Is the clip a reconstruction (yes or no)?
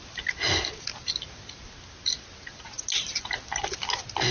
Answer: no